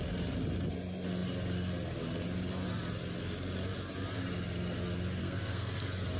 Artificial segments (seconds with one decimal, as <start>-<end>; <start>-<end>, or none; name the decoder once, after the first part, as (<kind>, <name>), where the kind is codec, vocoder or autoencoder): 5.2-5.7 (codec, SNAC)